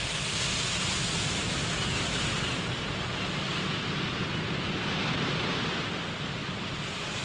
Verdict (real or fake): real